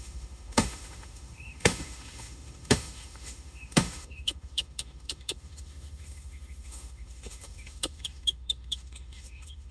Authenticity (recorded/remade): remade